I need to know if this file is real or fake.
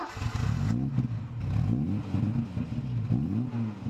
real